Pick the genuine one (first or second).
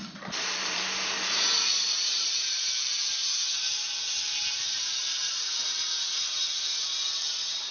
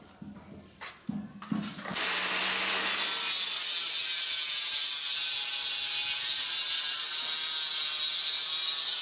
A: second